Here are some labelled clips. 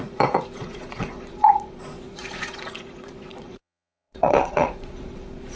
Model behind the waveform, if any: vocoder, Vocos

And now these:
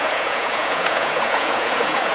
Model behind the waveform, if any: vocoder, Vocos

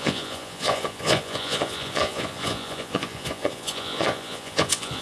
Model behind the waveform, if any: vocoder, Vocos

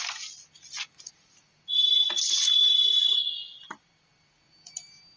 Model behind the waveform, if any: none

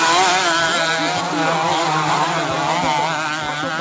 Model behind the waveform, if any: none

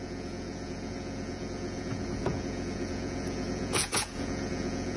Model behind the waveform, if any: vocoder, Vocos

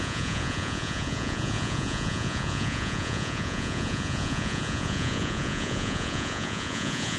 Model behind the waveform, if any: vocoder, Vocos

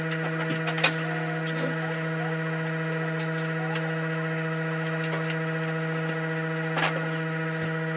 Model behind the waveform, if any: none